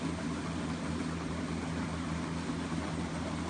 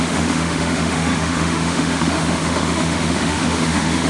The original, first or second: first